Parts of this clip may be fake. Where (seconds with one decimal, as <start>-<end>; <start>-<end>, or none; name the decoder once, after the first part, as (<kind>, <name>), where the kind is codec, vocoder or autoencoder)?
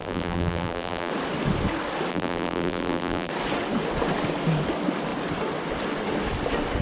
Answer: 0.0-1.1 (vocoder, BigVGAN v2); 2.1-3.3